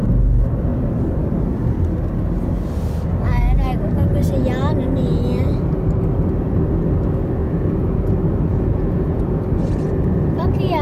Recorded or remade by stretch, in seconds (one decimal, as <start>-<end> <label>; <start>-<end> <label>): 0.0-7.4 recorded; 7.4-8.1 remade; 8.1-8.5 recorded; 8.5-9.2 remade; 9.2-10.8 recorded